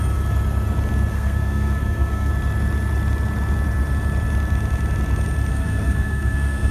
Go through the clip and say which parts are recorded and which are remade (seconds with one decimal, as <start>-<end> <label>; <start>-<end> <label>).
0.0-1.1 recorded; 1.1-2.3 remade; 2.3-5.5 recorded; 5.5-6.7 remade